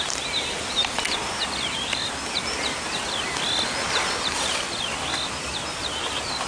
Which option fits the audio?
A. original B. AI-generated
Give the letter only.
A